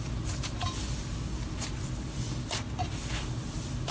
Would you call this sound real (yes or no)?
yes